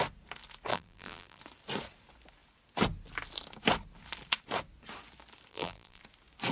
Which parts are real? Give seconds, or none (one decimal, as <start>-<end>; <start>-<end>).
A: 0.0-0.7; 1.4-5.5; 6.0-6.5

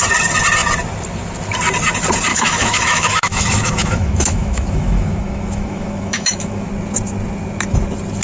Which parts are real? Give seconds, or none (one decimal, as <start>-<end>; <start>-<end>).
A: 0.0-2.3; 6.7-8.2

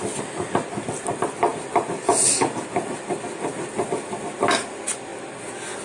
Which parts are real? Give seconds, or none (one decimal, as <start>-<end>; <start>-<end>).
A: 0.0-1.5; 4.1-5.8

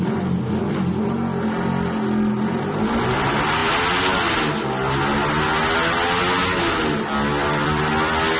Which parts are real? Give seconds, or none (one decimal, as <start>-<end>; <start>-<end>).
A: 0.0-7.3; 7.9-8.4

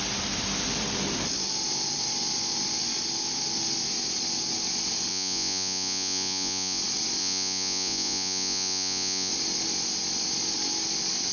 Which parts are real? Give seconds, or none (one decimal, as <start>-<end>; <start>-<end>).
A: 0.0-5.1; 6.8-7.2; 9.3-11.3

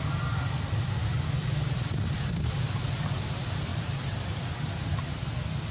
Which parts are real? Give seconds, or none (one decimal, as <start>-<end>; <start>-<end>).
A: 0.0-3.7; 5.2-5.7

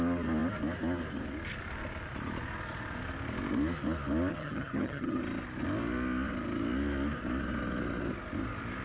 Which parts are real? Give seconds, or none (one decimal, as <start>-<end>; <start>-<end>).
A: 0.0-4.3; 5.2-8.8